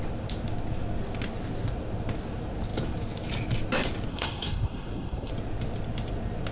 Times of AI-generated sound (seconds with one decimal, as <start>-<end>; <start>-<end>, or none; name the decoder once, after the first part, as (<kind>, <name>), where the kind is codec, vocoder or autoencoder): 4.1-5.3 (codec, SNAC)